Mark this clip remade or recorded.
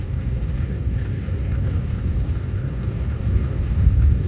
remade